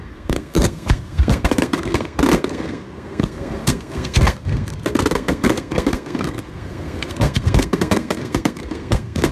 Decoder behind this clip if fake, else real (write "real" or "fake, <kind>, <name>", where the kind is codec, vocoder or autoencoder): fake, codec, SNAC